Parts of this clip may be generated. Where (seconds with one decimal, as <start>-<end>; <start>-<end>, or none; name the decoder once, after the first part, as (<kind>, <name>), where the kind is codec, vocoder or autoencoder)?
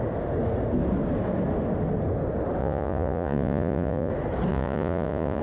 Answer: 2.6-4.1 (vocoder, Vocos); 4.5-5.4